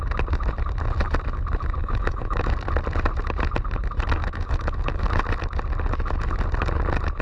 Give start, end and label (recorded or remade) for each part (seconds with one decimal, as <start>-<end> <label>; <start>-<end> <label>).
0.0-1.8 recorded; 1.8-2.5 remade; 2.5-4.2 recorded; 4.2-5.0 remade; 5.0-7.2 recorded